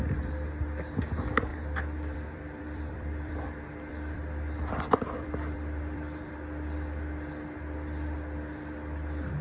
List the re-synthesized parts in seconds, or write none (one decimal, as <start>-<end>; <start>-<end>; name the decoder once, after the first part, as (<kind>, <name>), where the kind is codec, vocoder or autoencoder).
1.5-6.3 (vocoder, BigVGAN v2)